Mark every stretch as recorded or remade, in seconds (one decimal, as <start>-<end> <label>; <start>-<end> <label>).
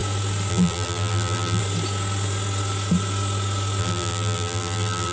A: 0.0-0.5 recorded; 0.5-1.6 remade; 1.6-3.8 recorded; 3.8-5.1 remade